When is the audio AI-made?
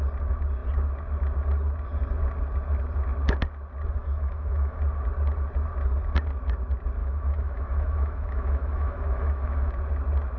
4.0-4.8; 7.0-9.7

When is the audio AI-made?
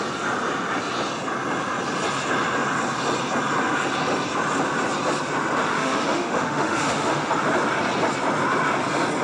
5.7-7.3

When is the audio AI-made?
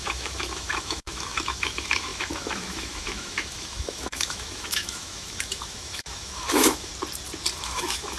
0.0-6.9; 7.6-8.2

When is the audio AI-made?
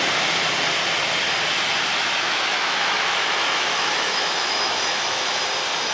1.9-5.4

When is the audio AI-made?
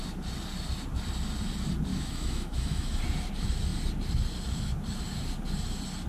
1.9-3.0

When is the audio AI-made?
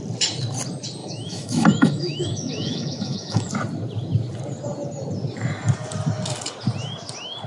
1.0-3.5